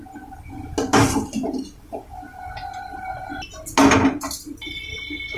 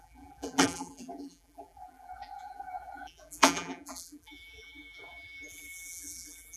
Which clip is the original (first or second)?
first